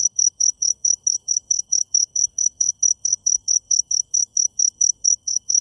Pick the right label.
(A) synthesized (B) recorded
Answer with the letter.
A